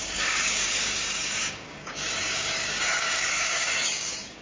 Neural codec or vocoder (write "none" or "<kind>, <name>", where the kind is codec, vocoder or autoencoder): codec, DAC